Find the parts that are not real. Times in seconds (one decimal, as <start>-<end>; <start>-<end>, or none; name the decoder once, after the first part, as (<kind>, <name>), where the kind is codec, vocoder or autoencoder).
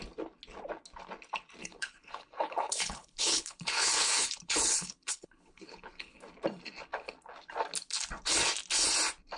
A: 1.6-6.2 (codec, HILCodec)